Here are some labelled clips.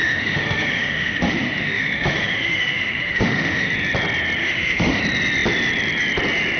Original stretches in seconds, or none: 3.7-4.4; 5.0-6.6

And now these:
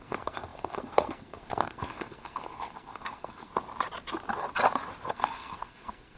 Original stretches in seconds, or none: 3.5-5.1

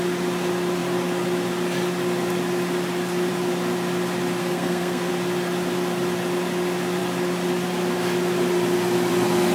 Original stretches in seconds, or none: 0.0-4.4; 5.1-9.5

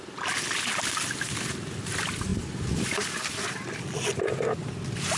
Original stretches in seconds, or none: 0.0-5.2

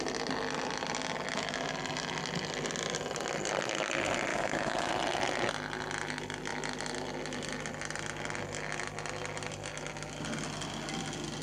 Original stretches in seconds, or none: 0.0-4.3; 4.9-11.4